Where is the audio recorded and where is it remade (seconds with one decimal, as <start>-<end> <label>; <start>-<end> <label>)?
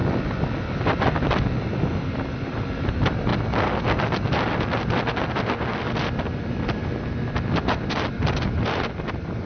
0.0-1.9 recorded; 1.9-3.3 remade; 3.3-7.9 recorded; 7.9-9.5 remade